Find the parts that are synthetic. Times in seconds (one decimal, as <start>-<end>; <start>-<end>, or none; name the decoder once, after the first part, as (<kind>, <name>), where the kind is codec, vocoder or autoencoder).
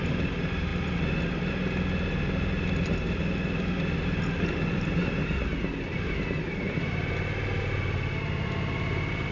0.0-0.7 (vocoder, BigVGAN v2); 4.7-5.2